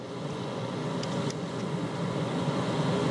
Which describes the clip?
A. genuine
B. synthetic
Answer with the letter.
B